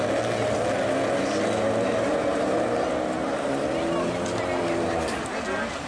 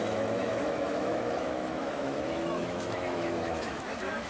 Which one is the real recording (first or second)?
first